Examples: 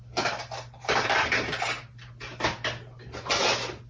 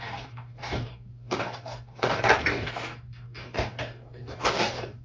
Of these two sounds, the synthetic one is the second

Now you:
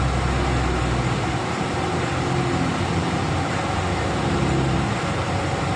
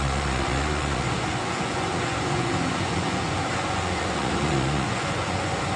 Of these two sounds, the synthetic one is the second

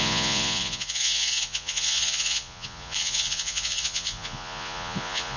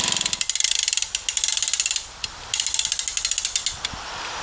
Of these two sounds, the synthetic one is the first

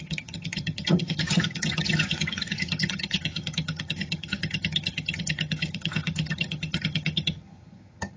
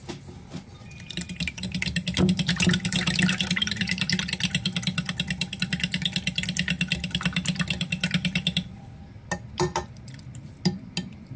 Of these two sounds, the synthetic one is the first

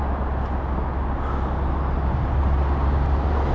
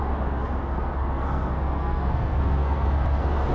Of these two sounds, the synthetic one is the second